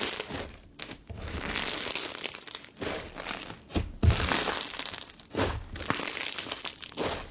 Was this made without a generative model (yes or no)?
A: yes